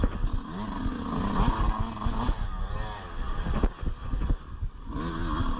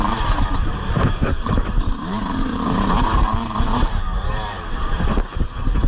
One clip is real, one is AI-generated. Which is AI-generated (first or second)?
second